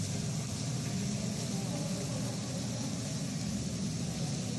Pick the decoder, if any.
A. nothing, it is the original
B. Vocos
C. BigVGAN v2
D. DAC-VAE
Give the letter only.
A